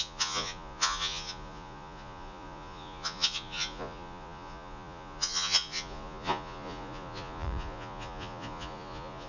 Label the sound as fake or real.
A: fake